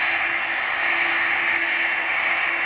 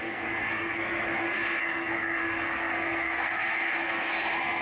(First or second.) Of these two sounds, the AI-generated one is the second